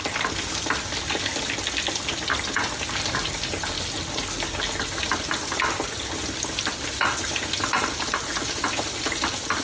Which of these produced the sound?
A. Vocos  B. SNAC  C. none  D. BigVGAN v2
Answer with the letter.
C